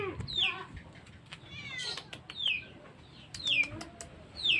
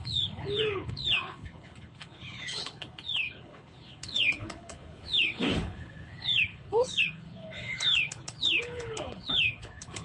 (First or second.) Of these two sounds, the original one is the first